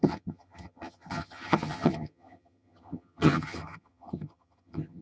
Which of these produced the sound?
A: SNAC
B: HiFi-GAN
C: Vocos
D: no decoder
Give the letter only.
B